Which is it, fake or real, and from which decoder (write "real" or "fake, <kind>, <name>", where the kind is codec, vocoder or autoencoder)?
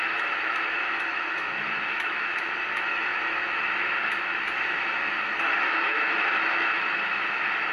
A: fake, autoencoder, DAC-VAE